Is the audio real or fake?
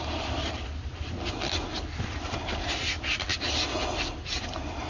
real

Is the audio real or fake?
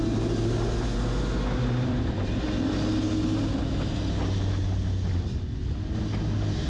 real